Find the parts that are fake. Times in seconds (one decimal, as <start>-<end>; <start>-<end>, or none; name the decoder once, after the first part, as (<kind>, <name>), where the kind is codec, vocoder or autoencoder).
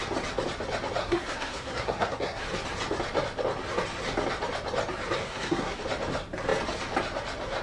1.0-2.4 (codec, SNAC); 5.2-5.8